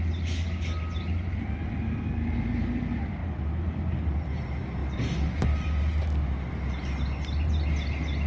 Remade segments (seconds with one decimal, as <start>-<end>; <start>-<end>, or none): none